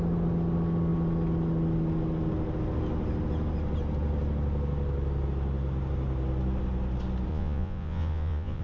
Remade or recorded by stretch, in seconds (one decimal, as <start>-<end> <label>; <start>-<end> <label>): 0.0-7.3 recorded; 7.3-8.6 remade